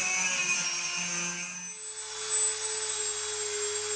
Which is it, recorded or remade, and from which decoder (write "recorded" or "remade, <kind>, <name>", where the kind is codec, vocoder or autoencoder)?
recorded